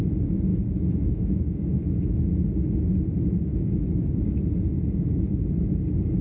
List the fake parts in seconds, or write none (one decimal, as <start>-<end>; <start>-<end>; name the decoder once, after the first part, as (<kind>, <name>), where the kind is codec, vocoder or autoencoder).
0.5-2.3 (autoencoder, DAC-VAE); 3.5-4.1